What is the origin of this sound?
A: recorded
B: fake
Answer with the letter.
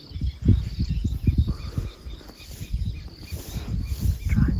A